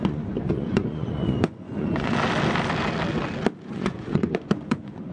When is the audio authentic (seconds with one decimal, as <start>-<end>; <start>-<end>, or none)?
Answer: 2.1-3.7